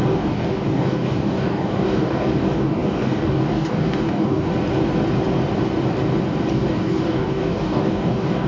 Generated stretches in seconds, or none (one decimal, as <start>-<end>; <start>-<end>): 0.0-4.5; 6.5-8.5